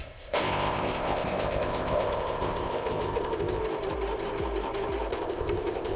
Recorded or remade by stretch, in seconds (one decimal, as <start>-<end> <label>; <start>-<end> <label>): 0.0-3.6 remade; 3.6-5.1 recorded; 5.1-6.0 remade